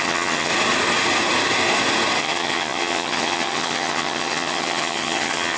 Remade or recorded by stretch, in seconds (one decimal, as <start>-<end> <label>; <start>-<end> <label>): 0.0-0.5 remade; 0.5-2.2 recorded; 2.2-5.6 remade